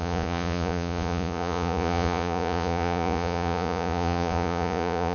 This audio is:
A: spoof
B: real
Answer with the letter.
A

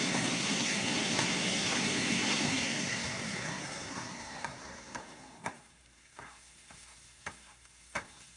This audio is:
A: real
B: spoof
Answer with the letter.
B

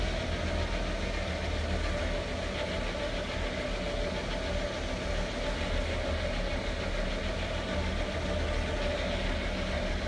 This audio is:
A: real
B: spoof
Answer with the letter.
A